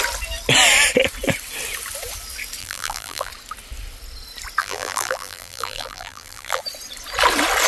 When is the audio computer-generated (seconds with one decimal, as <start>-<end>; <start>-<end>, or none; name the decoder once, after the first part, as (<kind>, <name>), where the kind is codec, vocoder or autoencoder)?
2.6-3.3 (vocoder, BigVGAN v2); 4.6-6.6